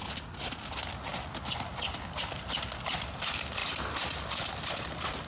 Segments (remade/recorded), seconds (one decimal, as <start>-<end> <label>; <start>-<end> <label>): 0.0-5.3 recorded